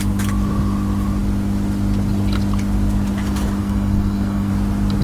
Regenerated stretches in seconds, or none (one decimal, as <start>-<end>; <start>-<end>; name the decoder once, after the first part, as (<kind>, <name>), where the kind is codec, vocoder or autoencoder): 3.6-4.5 (codec, SNAC)